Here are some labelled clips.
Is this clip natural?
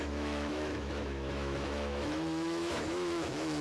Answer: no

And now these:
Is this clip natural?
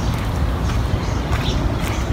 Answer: yes